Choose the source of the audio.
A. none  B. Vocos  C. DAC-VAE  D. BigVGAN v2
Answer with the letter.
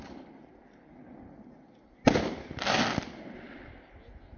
A